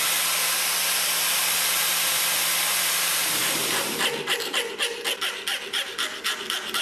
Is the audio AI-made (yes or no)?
no